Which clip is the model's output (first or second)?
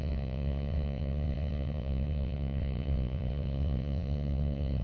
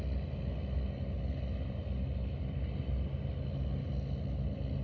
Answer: first